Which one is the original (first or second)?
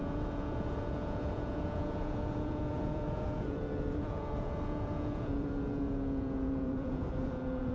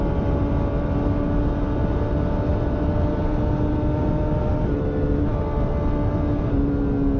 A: second